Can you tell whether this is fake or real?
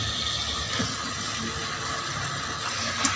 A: real